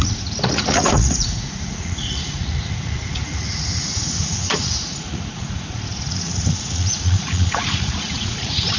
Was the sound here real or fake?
fake